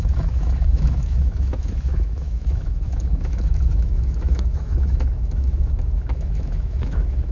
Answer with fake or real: fake